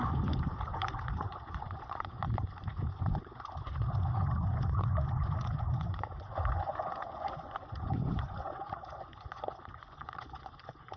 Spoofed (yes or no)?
yes